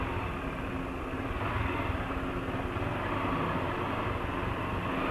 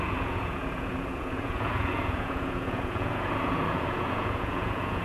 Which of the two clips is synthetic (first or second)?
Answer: second